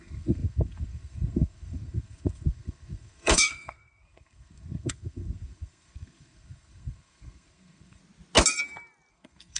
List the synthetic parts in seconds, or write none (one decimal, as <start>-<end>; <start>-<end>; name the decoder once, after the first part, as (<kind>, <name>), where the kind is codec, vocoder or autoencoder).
0.0-8.0 (codec, SNAC); 9.1-9.6